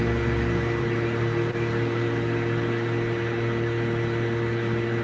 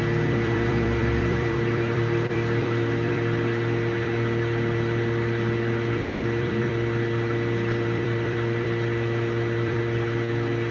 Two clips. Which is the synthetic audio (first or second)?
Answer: second